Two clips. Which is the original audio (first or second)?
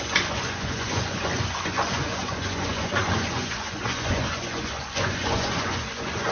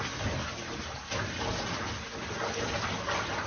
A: second